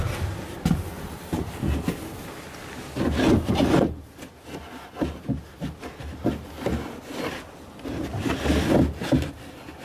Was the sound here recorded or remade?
recorded